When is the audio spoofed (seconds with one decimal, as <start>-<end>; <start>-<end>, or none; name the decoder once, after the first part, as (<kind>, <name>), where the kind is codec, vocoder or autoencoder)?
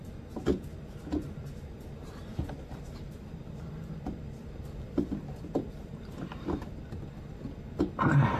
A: 1.0-8.4 (vocoder, BigVGAN v2)